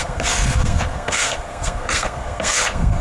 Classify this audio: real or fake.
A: fake